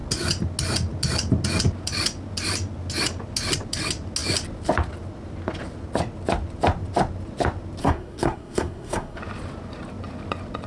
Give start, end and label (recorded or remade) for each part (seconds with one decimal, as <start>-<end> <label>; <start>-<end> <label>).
0.0-7.8 recorded; 7.8-9.2 remade; 9.2-10.7 recorded